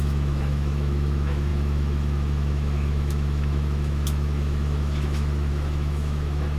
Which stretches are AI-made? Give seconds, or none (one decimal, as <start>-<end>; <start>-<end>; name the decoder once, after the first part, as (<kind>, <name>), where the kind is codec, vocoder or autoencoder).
0.0-6.6 (autoencoder, DAC-VAE)